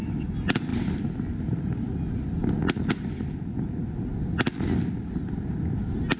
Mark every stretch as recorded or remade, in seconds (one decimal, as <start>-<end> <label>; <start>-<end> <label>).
0.0-6.2 recorded